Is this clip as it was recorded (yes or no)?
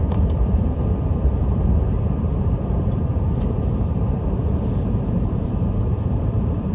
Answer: no